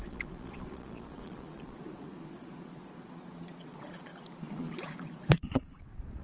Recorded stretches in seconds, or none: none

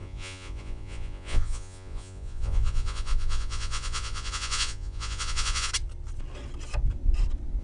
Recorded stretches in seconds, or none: 5.7-7.6

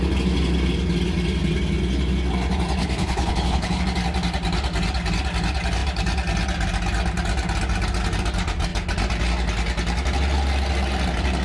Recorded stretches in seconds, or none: 0.0-2.8; 3.8-11.4

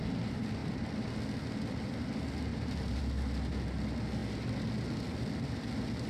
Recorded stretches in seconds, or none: 0.0-2.5; 3.0-6.1

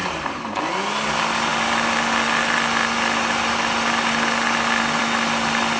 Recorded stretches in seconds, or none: 0.0-5.8

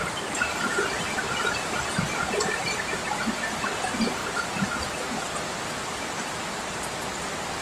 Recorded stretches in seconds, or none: 2.8-7.6

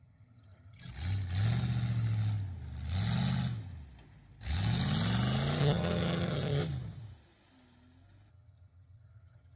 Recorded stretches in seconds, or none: 0.9-5.6; 6.6-8.3